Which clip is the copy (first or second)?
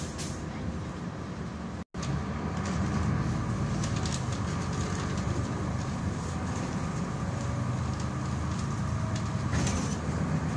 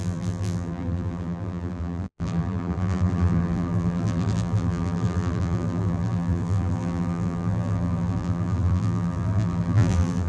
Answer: second